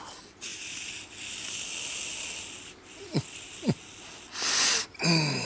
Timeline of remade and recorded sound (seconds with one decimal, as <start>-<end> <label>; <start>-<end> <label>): 0.0-5.4 recorded

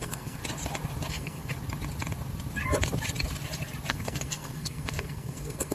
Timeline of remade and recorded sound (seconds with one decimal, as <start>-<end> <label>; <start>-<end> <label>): 0.0-0.4 remade; 0.4-1.1 recorded; 1.1-1.5 remade; 1.5-3.9 recorded; 3.9-5.7 remade

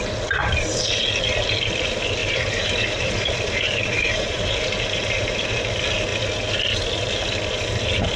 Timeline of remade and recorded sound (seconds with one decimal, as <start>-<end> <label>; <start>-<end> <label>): 0.0-0.4 recorded; 0.4-0.9 remade; 0.9-2.2 recorded; 2.2-5.6 remade; 5.6-8.2 recorded

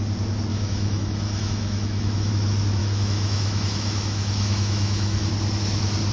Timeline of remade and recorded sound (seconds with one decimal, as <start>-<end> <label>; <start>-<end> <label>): 0.0-0.5 recorded; 0.5-2.3 remade; 2.3-2.8 recorded; 2.8-5.3 remade; 5.3-6.1 recorded

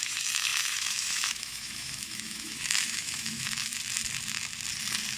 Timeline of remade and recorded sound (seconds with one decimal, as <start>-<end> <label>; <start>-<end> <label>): 0.0-3.7 remade; 3.7-5.2 recorded